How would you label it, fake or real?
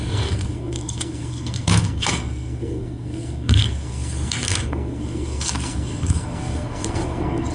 fake